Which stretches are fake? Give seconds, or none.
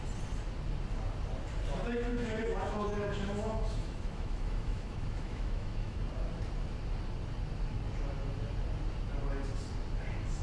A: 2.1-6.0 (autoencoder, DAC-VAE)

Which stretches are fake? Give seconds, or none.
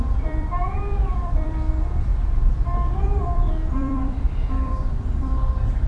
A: 0.0-5.9 (vocoder, BigVGAN v2)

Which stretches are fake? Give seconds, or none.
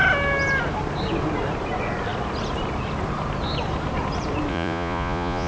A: 4.5-5.5 (vocoder, Vocos)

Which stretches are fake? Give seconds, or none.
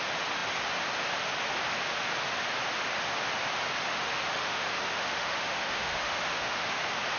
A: 3.9-6.8 (autoencoder, DAC-VAE)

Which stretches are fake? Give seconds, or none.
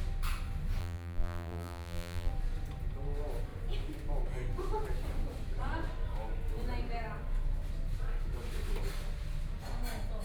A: 0.8-2.3 (vocoder, BigVGAN v2)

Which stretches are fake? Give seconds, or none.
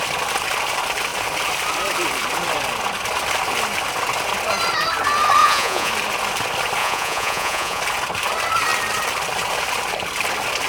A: 5.4-5.9 (vocoder, Vocos); 6.8-7.8